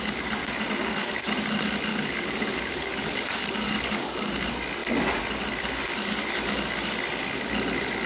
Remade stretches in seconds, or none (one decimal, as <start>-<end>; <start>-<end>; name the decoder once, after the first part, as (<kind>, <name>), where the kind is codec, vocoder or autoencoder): 0.4-1.2 (codec, DAC); 1.9-4.3